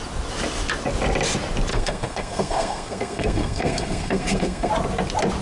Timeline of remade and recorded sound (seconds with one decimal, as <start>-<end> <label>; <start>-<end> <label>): 0.0-1.7 recorded; 1.7-4.7 remade; 4.7-5.4 recorded